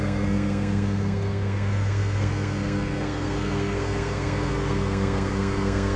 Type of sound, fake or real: fake